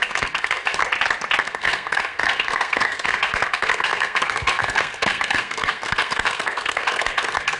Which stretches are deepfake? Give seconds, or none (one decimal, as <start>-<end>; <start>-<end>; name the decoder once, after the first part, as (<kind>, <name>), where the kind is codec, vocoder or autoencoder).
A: 0.0-0.8 (codec, SNAC); 1.4-7.6